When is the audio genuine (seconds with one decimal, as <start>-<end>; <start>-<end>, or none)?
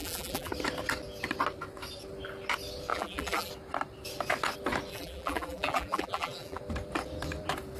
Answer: 0.5-2.9; 3.5-4.9; 6.6-7.8